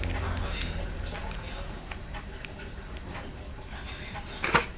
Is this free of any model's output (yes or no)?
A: yes